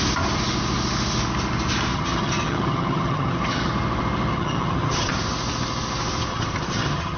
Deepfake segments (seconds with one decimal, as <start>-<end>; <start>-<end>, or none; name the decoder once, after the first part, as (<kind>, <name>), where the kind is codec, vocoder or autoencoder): 1.9-3.7 (vocoder, HiFi-GAN); 4.3-5.1; 6.3-7.2